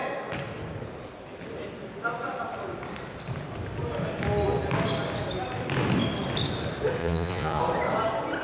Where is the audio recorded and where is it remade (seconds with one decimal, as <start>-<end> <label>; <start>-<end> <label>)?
0.0-7.0 recorded; 7.0-7.6 remade; 7.6-8.4 recorded